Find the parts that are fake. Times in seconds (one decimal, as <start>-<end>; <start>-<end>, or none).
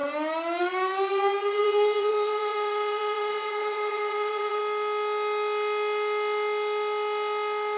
0.6-4.6